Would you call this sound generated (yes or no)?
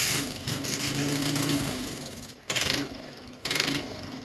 yes